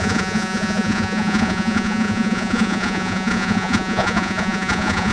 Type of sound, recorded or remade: remade